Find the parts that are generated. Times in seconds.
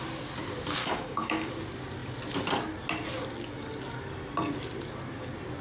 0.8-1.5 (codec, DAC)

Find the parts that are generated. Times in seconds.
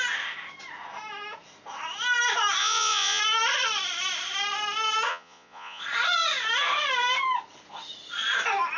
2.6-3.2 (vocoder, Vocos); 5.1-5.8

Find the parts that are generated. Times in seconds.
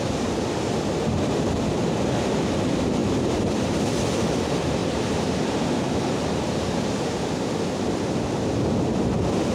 3.0-3.7 (vocoder, BigVGAN v2); 4.8-7.2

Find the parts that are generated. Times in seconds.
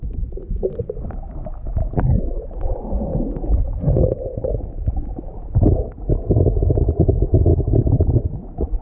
1.8-2.7 (autoencoder, DAC-VAE); 7.5-8.8